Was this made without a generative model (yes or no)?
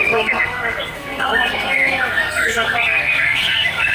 no